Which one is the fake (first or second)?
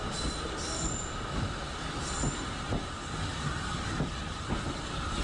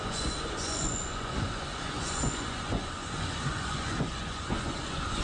second